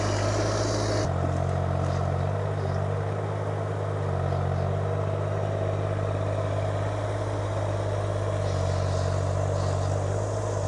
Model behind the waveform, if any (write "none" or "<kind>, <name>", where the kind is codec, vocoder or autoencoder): none